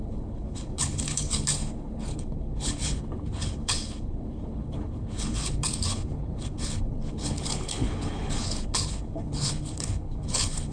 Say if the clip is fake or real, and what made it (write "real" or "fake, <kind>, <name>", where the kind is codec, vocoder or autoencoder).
fake, codec, HILCodec